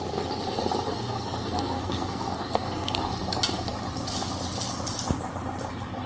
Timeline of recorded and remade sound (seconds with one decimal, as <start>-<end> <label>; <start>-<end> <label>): 0.0-0.9 recorded; 0.9-3.0 remade; 3.0-6.1 recorded